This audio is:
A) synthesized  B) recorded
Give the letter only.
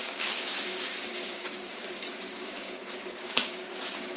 A